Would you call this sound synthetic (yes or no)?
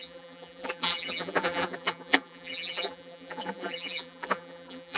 yes